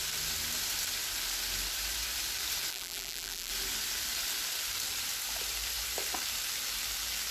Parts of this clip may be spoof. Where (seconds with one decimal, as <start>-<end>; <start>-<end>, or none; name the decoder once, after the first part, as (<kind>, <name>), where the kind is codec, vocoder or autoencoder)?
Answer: 2.7-3.5 (vocoder, BigVGAN v2)